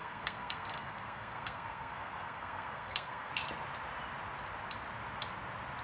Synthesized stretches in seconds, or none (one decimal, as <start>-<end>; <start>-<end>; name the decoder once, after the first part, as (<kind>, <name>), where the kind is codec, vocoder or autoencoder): 0.0-3.3 (codec, SNAC)